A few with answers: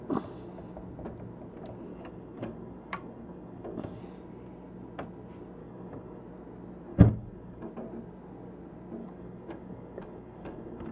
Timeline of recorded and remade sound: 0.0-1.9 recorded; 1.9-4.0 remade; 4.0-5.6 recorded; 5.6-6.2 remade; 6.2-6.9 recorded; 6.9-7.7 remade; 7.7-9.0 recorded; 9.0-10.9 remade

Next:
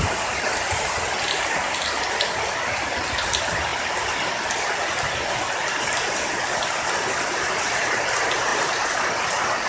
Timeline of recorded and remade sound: 0.0-9.7 recorded

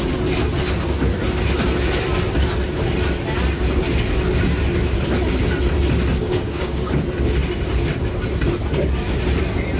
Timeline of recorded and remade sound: 0.0-6.2 recorded; 6.2-7.0 remade; 7.0-9.8 recorded

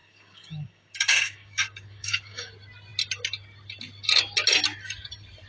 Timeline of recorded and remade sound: 0.0-2.5 remade; 2.5-5.5 recorded

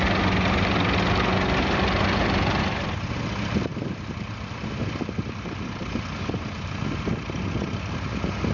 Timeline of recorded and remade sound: 0.0-8.5 recorded